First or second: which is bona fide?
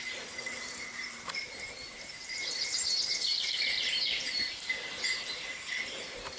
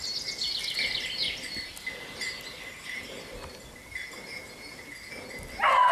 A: second